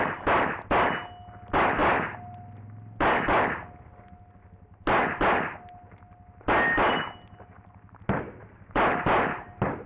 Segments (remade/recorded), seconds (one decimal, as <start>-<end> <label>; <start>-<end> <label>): 0.0-9.9 recorded